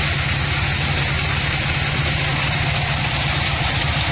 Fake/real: real